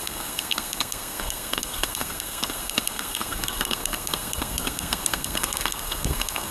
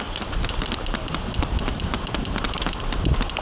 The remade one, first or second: first